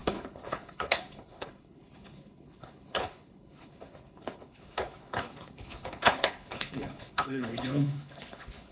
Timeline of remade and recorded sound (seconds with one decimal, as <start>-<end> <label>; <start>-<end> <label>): 0.0-8.7 remade